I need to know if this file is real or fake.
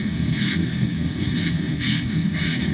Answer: fake